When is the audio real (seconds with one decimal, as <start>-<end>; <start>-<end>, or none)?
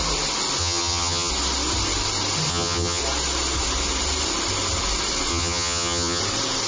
0.0-0.6; 1.3-2.5; 3.0-5.3; 6.2-6.7